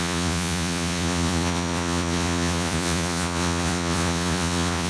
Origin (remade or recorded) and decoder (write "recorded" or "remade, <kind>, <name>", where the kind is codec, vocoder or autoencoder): remade, vocoder, Vocos